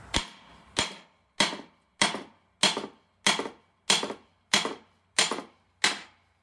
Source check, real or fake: real